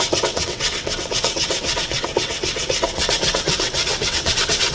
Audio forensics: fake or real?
fake